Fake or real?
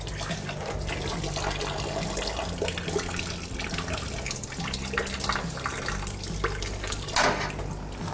real